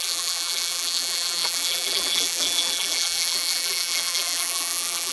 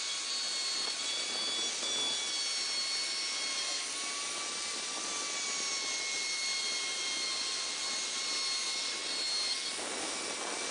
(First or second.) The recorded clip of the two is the second